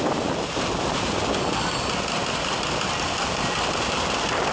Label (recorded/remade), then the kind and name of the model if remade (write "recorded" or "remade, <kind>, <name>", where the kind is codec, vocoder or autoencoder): recorded